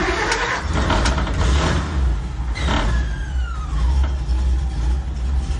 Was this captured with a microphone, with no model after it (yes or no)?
yes